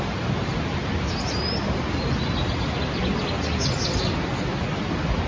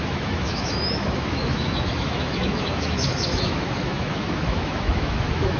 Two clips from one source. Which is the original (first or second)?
first